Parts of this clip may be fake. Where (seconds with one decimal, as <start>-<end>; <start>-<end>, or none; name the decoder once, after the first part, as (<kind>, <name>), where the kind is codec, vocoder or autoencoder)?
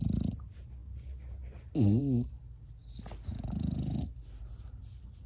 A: none